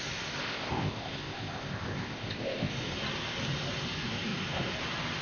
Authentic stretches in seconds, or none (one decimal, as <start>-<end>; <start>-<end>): 0.0-0.4; 2.7-5.2